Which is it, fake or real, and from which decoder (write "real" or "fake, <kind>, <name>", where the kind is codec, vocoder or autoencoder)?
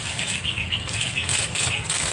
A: fake, codec, SNAC